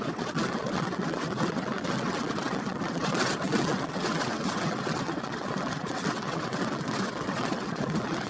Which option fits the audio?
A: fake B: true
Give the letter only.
A